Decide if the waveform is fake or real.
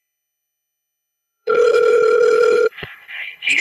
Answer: fake